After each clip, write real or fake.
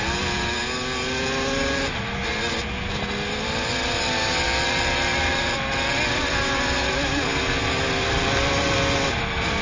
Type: real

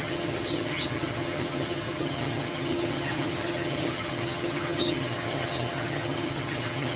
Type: fake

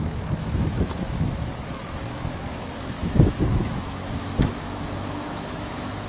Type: fake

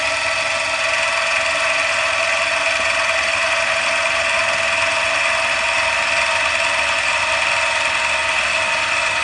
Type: real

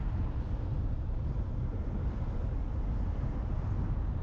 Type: real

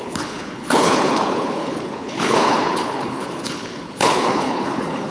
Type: fake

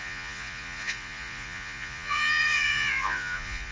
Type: fake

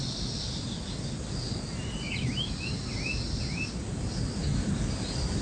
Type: real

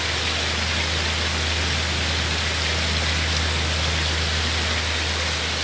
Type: real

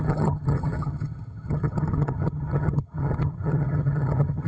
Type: fake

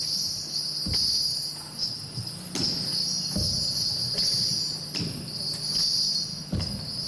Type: real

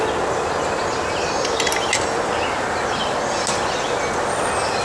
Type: real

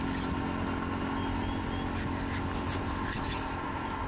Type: real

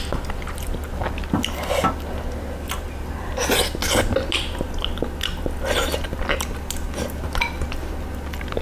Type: real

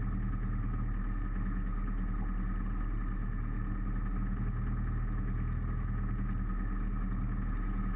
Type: real